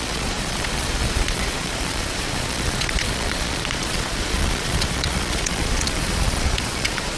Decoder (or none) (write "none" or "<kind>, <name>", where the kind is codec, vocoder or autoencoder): vocoder, Vocos